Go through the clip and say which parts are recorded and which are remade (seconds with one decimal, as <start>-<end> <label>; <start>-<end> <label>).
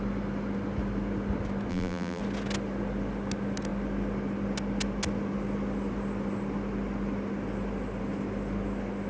0.0-1.7 recorded; 1.7-2.2 remade; 2.2-9.1 recorded